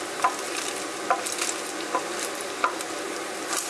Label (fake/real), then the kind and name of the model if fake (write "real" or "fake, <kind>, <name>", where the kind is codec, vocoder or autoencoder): real